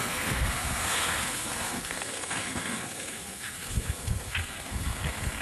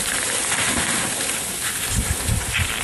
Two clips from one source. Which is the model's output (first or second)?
first